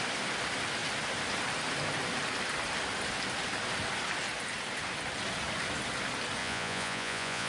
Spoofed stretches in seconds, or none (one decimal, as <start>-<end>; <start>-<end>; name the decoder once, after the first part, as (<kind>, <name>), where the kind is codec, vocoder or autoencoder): 6.4-7.5 (vocoder, Vocos)